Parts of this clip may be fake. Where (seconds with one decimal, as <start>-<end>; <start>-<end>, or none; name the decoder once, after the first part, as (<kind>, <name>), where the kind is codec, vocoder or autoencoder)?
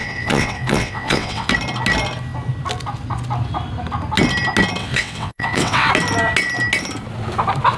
0.0-1.5 (vocoder, WaveNeXt); 4.8-5.9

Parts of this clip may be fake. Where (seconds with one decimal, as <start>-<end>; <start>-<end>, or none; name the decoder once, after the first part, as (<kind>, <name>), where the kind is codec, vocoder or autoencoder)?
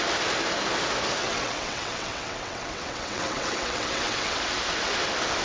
1.2-4.4 (vocoder, WaveNeXt)